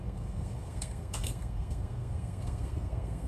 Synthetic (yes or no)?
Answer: yes